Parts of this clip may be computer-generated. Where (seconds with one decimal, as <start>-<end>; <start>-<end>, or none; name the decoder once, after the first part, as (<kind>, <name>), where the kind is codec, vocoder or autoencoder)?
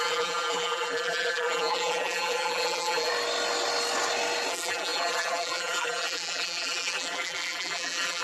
0.0-3.1 (vocoder, BigVGAN v2); 4.5-8.2